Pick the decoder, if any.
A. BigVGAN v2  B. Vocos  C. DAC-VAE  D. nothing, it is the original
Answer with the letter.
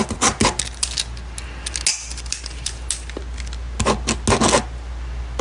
D